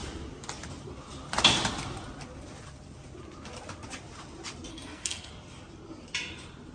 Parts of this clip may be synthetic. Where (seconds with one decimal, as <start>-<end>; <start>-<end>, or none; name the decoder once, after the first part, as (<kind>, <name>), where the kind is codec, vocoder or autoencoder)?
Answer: 4.7-5.3 (codec, SNAC)